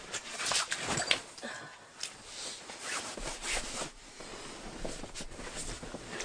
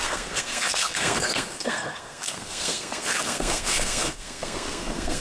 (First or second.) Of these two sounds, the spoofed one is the second